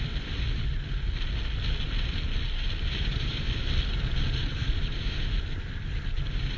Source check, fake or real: real